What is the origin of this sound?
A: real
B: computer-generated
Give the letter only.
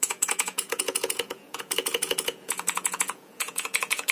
B